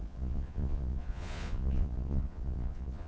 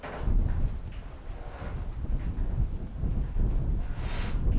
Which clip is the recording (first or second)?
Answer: second